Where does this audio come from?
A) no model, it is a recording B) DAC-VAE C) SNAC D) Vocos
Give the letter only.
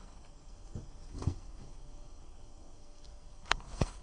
C